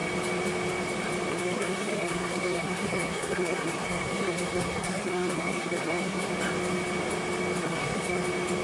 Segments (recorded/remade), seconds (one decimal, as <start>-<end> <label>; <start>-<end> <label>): 0.0-1.3 recorded; 1.3-6.3 remade; 6.3-7.6 recorded; 7.6-8.2 remade; 8.2-8.6 recorded